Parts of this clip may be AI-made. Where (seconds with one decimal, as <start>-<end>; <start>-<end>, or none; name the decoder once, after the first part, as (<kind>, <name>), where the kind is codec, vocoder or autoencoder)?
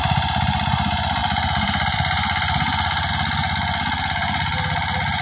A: 1.2-3.1 (vocoder, BigVGAN v2)